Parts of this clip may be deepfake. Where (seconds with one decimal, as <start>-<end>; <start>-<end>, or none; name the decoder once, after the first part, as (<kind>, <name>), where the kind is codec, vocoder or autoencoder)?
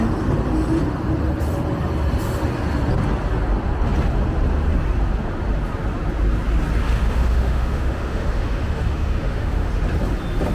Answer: 6.8-9.7 (autoencoder, DAC-VAE)